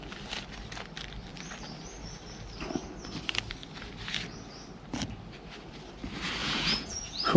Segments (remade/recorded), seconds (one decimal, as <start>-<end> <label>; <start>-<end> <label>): 0.0-6.4 recorded; 6.4-7.4 remade